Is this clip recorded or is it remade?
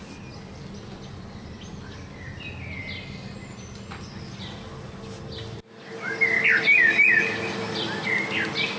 recorded